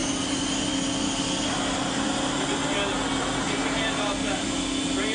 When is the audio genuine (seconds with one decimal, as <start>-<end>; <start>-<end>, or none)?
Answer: 0.0-5.1